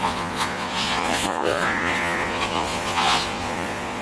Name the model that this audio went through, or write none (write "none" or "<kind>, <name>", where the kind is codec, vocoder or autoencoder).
vocoder, Vocos